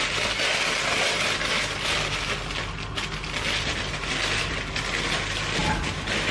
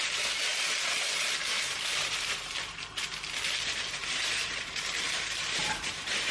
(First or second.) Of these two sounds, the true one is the first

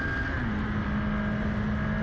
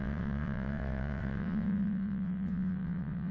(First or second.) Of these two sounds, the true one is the first